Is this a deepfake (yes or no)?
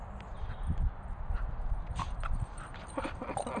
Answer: no